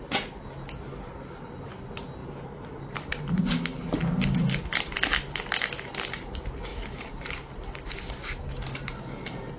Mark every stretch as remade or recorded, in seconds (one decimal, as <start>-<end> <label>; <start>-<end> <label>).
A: 0.0-2.2 recorded; 2.2-3.4 remade; 3.4-6.7 recorded; 6.7-9.1 remade; 9.1-9.6 recorded